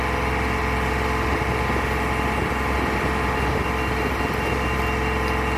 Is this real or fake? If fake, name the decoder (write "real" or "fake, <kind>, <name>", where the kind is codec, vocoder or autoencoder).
real